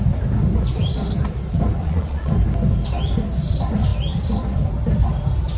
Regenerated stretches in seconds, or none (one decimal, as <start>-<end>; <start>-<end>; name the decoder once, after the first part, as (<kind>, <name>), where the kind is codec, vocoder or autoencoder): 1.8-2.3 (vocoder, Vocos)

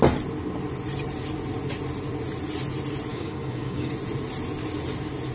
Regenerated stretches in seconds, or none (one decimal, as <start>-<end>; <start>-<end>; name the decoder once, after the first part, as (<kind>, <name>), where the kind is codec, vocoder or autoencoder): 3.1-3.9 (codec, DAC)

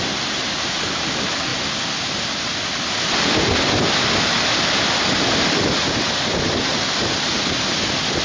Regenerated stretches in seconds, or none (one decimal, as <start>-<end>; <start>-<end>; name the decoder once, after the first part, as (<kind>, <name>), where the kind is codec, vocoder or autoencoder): none

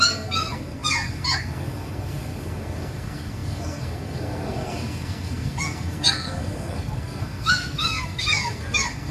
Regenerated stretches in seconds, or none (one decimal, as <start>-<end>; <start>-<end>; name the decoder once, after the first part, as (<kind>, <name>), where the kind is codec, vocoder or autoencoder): 0.0-9.1 (codec, SNAC)

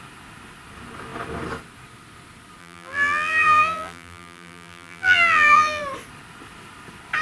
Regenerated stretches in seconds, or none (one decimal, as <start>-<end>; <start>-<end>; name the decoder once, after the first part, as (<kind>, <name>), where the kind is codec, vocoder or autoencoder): 2.6-5.8 (vocoder, BigVGAN v2)

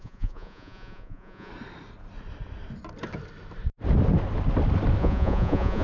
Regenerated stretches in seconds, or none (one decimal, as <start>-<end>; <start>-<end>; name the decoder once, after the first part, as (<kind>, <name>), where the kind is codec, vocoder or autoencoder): 0.0-1.5 (vocoder, Vocos); 5.0-5.8